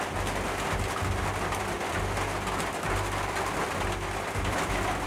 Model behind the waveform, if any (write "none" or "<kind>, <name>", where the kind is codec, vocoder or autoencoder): none